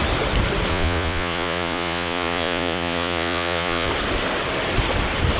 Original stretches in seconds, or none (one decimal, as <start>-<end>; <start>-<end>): 0.0-0.7; 3.9-5.4